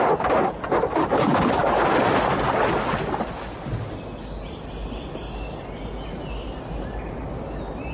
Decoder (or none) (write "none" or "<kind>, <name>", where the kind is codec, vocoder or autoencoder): none